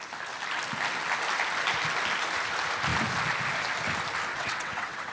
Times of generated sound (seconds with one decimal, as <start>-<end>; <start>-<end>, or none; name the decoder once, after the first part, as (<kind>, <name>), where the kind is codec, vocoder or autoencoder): 4.3-5.1 (vocoder, WaveNeXt)

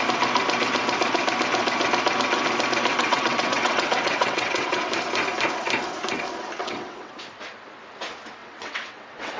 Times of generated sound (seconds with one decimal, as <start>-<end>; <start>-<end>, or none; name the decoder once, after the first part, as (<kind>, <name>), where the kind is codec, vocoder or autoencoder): 2.9-4.9 (vocoder, WaveNeXt); 6.6-7.1; 8.4-9.4

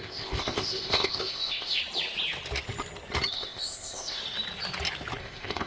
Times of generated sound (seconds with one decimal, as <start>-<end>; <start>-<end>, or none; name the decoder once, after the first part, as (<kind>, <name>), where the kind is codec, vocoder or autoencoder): 0.0-1.8 (codec, ZipCodec); 3.3-4.2; 5.2-5.7

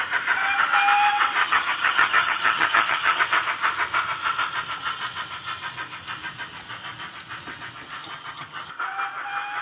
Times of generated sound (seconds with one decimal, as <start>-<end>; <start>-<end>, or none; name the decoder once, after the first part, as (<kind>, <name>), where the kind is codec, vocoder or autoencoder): 1.4-3.2 (vocoder, HiFi-GAN); 8.0-8.7